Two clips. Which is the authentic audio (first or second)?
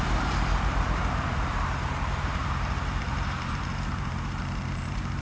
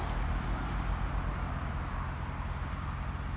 second